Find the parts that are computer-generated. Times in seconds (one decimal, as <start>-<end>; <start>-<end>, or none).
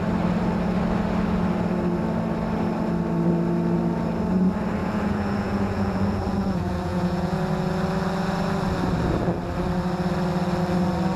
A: 4.8-7.4